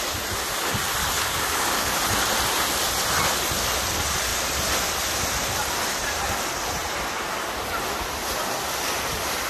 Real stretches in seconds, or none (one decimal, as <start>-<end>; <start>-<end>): 0.0-1.0; 1.9-9.5